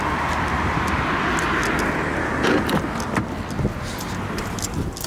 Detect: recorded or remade recorded